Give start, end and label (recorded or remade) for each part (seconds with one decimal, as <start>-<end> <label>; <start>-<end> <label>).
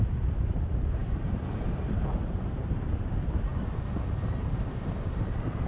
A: 0.0-3.5 remade; 3.5-4.4 recorded; 4.4-5.7 remade